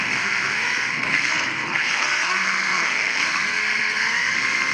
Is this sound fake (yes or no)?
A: yes